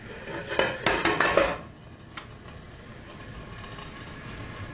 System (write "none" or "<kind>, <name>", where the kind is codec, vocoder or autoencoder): none